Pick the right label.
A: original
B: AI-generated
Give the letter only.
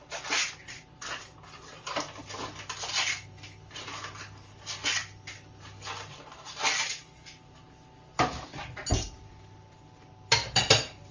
A